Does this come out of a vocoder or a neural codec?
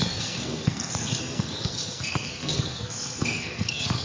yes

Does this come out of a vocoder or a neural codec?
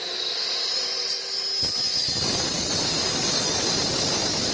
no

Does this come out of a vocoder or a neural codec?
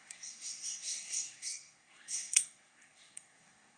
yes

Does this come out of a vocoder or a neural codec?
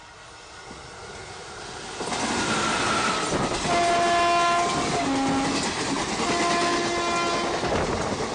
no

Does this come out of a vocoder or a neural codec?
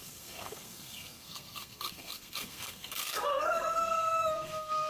yes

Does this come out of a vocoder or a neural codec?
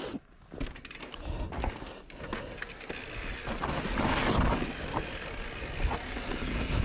no